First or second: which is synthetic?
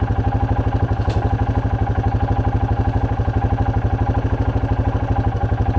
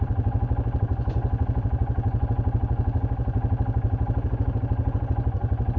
second